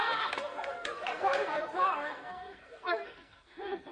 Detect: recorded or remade remade